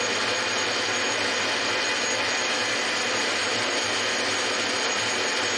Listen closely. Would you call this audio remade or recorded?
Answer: recorded